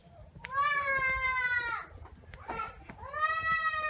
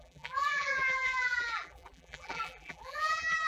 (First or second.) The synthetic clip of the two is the second